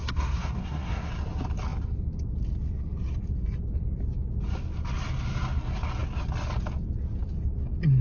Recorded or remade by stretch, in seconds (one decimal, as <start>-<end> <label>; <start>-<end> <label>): 0.0-1.1 remade; 1.1-8.0 recorded